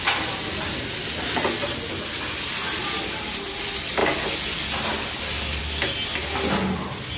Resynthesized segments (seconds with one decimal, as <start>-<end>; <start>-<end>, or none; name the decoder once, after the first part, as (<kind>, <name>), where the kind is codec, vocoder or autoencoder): none